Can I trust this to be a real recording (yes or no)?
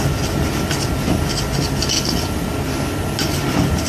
yes